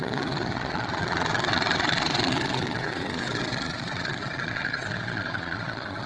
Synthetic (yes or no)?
yes